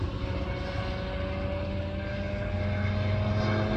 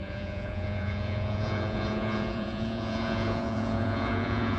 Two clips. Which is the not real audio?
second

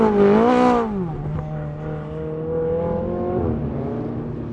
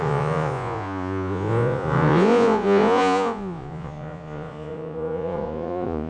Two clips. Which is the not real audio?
second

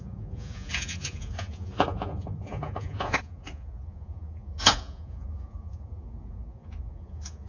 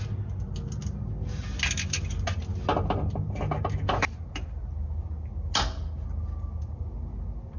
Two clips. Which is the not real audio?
first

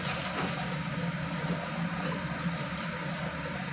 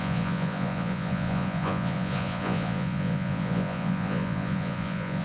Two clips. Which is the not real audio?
second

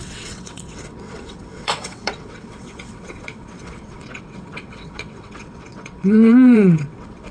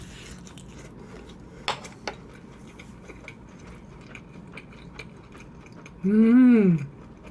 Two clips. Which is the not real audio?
first